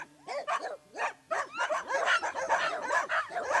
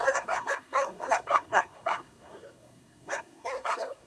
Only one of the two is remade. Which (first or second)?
second